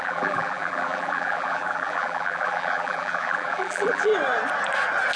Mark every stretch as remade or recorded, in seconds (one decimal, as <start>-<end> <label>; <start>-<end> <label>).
0.0-4.1 remade; 4.1-5.2 recorded